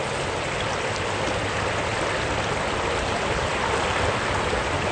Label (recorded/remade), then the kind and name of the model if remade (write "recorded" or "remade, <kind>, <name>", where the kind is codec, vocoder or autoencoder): recorded